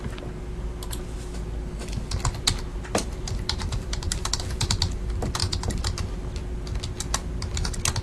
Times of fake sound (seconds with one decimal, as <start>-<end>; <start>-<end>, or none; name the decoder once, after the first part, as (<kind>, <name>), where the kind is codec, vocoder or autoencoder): 2.7-4.8 (vocoder, BigVGAN v2); 5.4-6.2